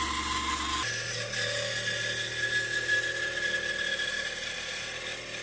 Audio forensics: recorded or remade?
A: recorded